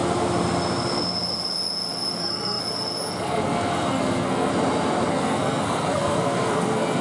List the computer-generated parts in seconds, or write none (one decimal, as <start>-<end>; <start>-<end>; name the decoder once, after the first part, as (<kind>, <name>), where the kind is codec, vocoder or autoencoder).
2.2-2.6 (codec, SNAC); 3.2-4.5; 5.1-7.0